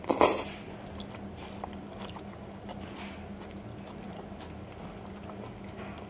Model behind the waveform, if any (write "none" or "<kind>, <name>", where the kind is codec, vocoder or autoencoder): none